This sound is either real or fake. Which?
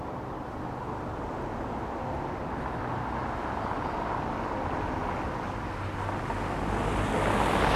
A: real